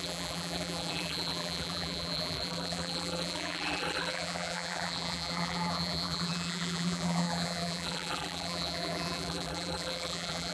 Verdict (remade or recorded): remade